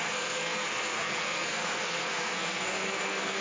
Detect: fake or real fake